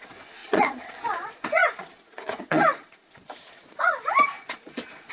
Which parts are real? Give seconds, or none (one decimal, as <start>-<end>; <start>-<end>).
none